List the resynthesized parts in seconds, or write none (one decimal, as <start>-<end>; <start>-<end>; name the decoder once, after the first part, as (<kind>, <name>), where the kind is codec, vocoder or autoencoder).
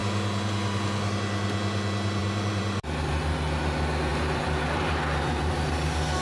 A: 2.2-3.1 (vocoder, BigVGAN v2); 4.1-5.7